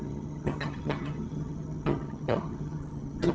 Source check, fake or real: fake